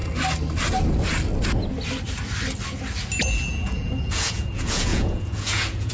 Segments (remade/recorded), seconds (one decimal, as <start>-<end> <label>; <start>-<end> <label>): 0.0-3.5 recorded; 3.5-5.9 remade